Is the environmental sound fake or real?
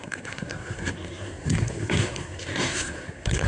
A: fake